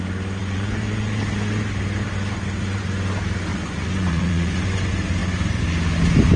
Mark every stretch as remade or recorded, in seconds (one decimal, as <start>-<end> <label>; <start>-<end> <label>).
0.0-0.4 recorded; 0.4-1.2 remade; 1.2-3.5 recorded; 3.5-4.8 remade; 4.8-6.4 recorded